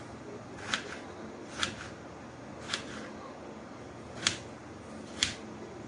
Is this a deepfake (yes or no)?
no